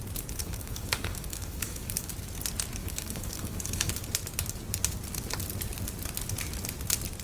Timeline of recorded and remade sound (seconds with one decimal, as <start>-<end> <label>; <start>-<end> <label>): 0.0-0.4 recorded; 0.4-2.1 remade; 2.1-2.8 recorded; 2.8-3.9 remade; 3.9-7.2 recorded

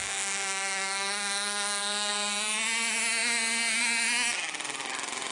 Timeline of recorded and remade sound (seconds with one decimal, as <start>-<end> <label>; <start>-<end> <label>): 0.0-2.1 remade; 2.1-5.3 recorded

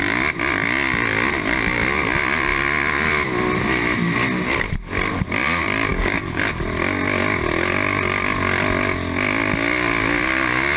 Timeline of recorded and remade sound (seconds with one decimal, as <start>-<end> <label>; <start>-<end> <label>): 0.0-5.9 recorded; 5.9-6.5 remade; 6.5-10.8 recorded